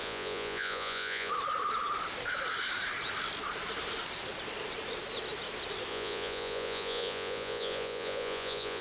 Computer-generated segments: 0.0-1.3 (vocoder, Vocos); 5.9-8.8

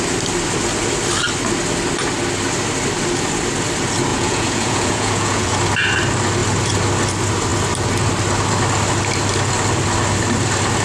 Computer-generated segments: 4.1-5.6 (vocoder, Vocos)

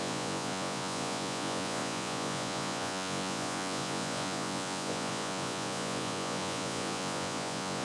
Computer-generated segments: 0.0-7.8 (vocoder, Vocos)

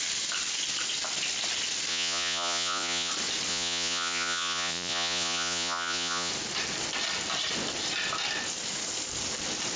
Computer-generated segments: 1.9-3.1 (vocoder, Vocos); 3.5-6.3

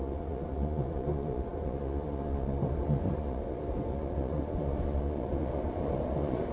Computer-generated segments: 0.0-6.5 (vocoder, Vocos)

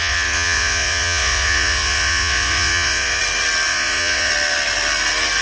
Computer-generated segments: 0.0-3.2 (vocoder, Vocos); 3.7-4.3

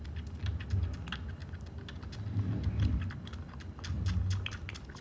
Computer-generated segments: none

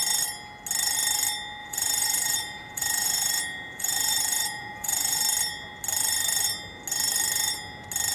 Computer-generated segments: 1.6-5.2 (vocoder, Vocos)